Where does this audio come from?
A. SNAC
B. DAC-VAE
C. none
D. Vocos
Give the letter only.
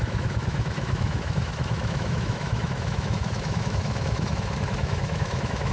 B